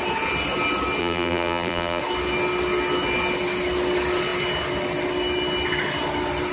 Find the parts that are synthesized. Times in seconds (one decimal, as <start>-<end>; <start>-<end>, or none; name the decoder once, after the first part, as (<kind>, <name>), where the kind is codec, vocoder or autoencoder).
1.0-2.0 (vocoder, BigVGAN v2)